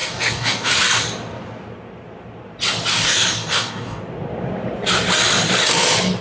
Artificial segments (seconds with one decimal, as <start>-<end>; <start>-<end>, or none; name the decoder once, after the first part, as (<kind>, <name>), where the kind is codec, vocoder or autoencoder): 0.0-0.7 (codec, DAC); 2.9-4.0